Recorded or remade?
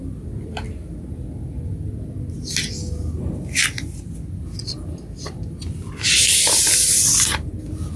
recorded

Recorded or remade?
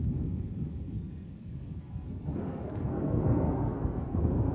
remade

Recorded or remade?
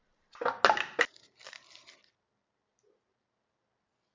recorded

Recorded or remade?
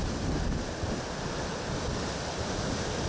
recorded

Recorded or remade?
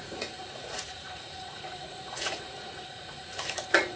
remade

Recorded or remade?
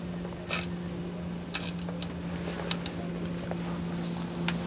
recorded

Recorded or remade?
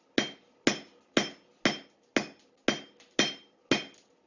recorded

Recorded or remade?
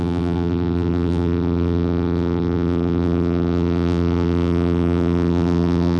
remade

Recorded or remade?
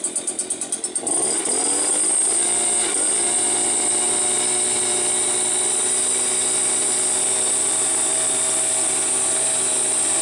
recorded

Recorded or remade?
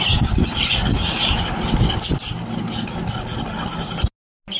recorded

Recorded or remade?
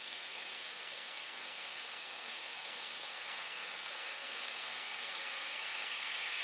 remade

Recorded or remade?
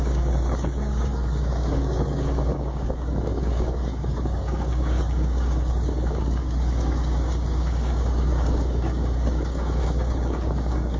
remade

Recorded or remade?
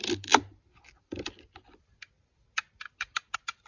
recorded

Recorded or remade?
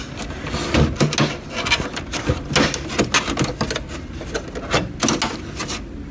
recorded